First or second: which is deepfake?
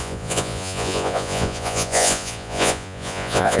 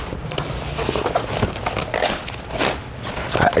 first